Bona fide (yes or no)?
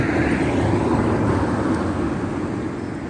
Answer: yes